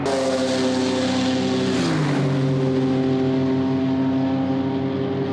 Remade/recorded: recorded